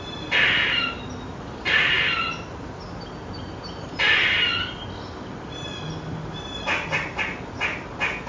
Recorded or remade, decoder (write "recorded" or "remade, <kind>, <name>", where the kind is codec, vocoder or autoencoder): recorded